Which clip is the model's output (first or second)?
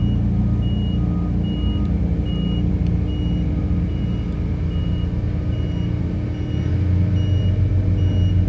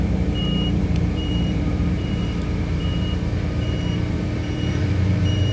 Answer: second